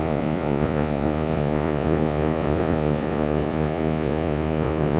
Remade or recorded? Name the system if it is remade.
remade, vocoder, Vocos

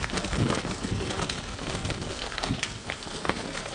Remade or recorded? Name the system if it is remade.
remade, codec, SNAC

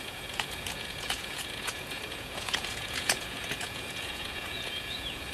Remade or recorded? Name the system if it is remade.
remade, vocoder, Vocos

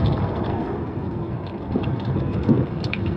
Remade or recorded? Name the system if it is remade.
remade, codec, SNAC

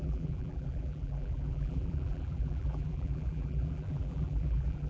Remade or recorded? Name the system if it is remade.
remade, vocoder, BigVGAN v2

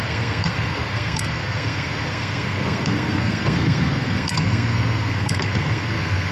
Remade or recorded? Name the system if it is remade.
remade, codec, SNAC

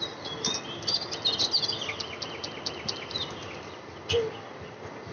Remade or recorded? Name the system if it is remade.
recorded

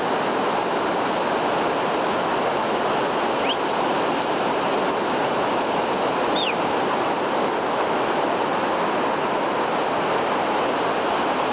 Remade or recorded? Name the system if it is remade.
recorded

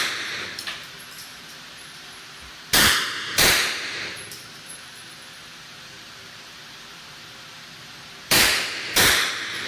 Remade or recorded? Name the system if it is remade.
remade, vocoder, BigVGAN v2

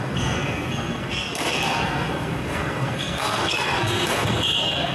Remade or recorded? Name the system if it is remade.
remade, codec, SNAC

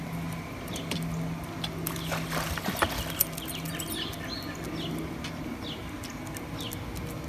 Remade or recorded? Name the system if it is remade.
recorded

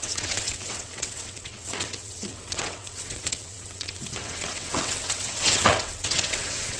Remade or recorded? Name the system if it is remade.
remade, vocoder, WaveNeXt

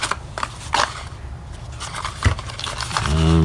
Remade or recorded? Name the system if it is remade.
recorded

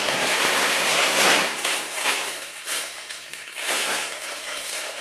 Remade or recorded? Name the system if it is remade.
remade, codec, SNAC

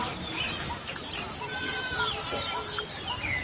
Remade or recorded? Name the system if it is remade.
recorded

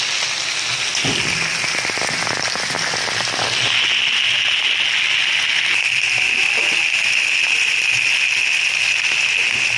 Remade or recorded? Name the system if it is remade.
recorded